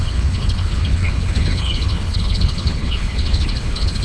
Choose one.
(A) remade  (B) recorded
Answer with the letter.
A